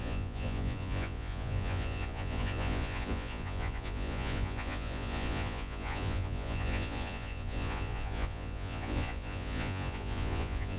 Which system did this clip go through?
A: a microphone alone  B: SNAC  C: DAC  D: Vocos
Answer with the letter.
D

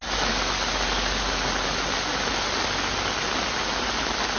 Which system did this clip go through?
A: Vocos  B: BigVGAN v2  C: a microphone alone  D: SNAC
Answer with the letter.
C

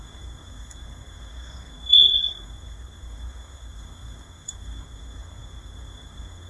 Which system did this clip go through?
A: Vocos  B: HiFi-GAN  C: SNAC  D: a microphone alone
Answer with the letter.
C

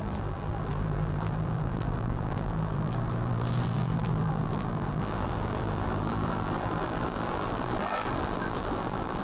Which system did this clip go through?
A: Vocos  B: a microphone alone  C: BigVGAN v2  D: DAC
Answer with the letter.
C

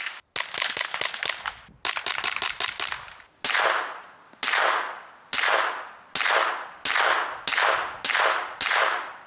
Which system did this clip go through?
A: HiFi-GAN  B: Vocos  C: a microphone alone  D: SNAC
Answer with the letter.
C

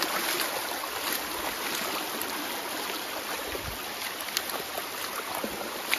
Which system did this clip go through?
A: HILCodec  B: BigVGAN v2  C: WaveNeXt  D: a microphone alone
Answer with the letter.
D